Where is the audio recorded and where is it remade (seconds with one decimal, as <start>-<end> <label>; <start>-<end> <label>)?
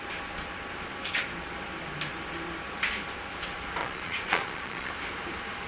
0.0-3.8 recorded; 3.8-4.9 remade; 4.9-5.7 recorded